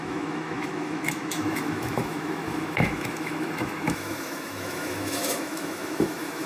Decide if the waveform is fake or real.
fake